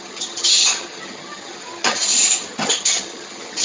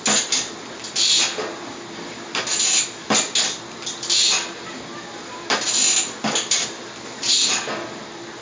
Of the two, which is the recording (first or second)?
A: second